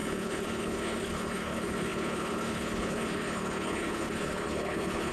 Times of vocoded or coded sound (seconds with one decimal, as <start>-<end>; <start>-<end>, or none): 0.0-5.1